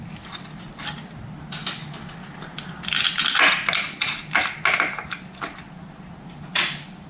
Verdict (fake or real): real